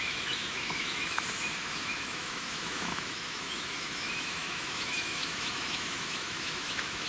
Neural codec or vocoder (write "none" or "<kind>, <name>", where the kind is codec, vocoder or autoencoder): autoencoder, DAC-VAE